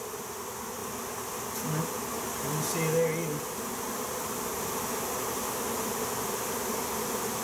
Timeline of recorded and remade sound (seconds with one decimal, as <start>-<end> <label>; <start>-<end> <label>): 0.0-7.4 recorded